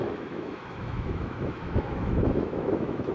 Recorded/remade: remade